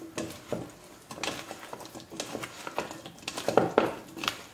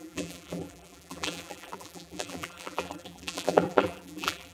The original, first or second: first